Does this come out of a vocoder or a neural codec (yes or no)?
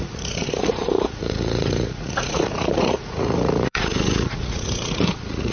yes